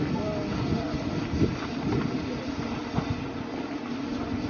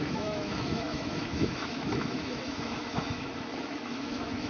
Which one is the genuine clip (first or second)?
first